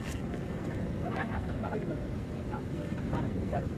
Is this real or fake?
fake